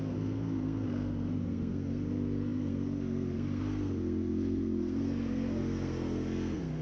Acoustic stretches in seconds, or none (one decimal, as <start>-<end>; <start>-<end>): none